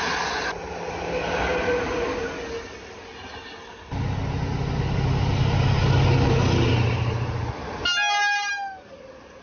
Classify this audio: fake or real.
real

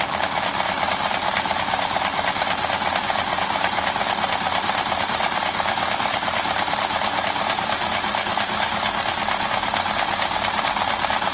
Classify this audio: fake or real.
real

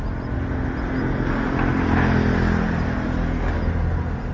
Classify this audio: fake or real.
real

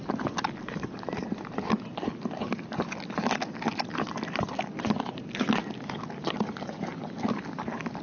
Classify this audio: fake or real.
real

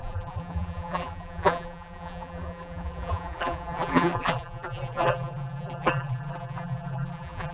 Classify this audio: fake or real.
fake